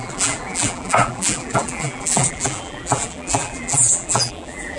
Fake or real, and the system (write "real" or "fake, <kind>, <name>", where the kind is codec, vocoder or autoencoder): fake, vocoder, BigVGAN v2